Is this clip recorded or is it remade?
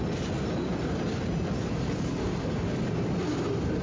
recorded